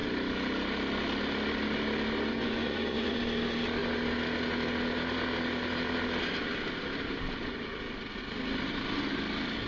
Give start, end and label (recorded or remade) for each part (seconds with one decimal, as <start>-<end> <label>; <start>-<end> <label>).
0.0-2.3 recorded; 2.3-3.2 remade; 3.2-9.7 recorded